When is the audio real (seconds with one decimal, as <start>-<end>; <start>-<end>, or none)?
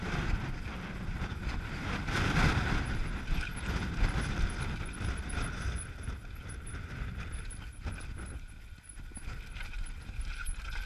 0.0-10.9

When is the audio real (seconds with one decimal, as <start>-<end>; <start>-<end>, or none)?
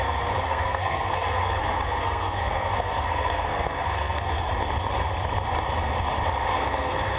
4.5-6.5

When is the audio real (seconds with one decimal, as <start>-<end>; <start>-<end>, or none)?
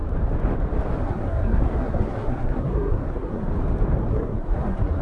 0.0-1.0; 3.5-4.0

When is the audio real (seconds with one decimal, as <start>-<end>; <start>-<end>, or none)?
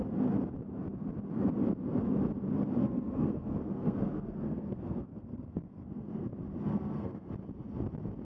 0.0-2.8; 6.3-6.7; 7.3-8.2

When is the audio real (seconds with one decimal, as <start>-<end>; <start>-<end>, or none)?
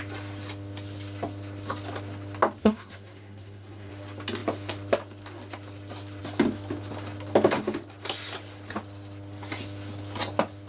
0.0-2.6; 3.9-10.7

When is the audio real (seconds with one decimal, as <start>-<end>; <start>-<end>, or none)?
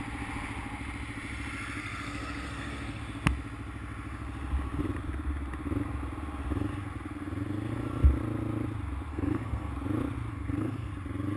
0.0-1.8; 3.0-9.1; 9.7-10.3; 10.9-11.4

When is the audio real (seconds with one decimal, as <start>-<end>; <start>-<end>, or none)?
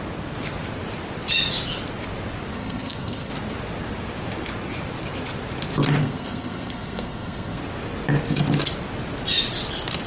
0.0-2.5; 3.3-6.0; 7.6-10.1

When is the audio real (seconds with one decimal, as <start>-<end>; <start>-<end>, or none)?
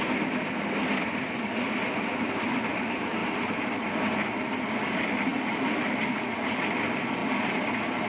0.0-8.1